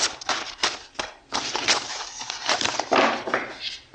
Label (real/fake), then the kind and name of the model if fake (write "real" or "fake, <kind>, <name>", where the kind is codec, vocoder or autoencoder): real